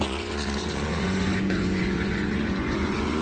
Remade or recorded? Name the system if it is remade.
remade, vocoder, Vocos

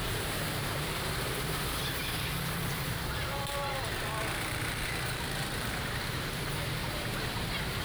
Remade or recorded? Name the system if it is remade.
remade, vocoder, BigVGAN v2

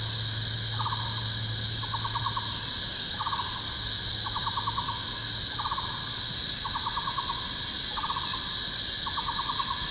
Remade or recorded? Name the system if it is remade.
recorded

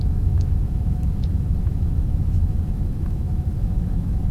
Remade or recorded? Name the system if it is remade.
remade, autoencoder, DAC-VAE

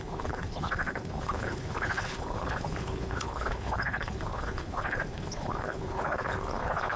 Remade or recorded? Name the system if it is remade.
remade, codec, HILCodec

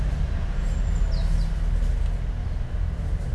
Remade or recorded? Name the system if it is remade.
recorded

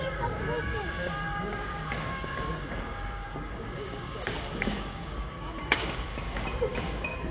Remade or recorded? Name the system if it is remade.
remade, codec, DAC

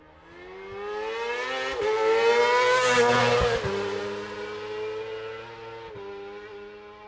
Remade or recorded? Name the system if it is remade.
recorded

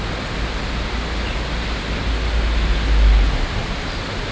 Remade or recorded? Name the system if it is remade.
recorded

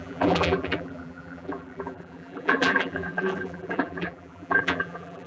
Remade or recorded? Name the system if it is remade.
remade, vocoder, BigVGAN v2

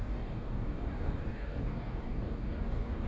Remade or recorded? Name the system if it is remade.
remade, codec, DAC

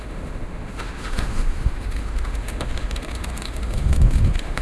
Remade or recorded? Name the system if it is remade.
remade, autoencoder, DAC-VAE